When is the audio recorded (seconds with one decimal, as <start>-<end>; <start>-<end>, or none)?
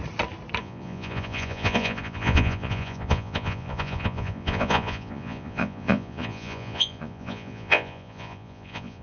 0.0-0.6